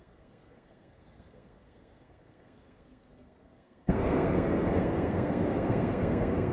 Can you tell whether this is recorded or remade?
remade